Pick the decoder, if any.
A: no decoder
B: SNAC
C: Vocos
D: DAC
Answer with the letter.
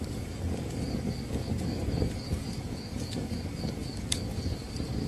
D